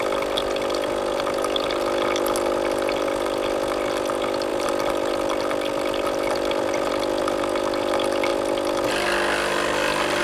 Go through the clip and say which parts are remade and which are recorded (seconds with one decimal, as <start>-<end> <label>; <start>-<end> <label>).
0.0-4.5 recorded; 4.5-6.9 remade; 6.9-10.2 recorded